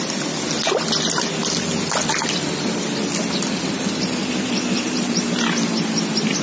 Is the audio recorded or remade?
recorded